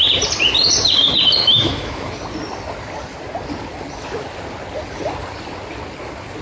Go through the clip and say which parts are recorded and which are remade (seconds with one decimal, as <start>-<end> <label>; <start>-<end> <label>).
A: 0.0-1.4 recorded; 1.4-2.1 remade; 2.1-6.4 recorded